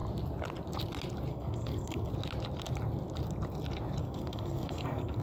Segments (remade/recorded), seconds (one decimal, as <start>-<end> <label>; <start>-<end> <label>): 0.0-1.3 recorded; 1.3-2.1 remade; 2.1-4.0 recorded; 4.0-5.2 remade